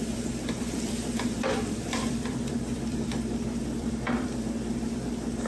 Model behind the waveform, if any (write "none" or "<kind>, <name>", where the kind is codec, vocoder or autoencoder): vocoder, BigVGAN v2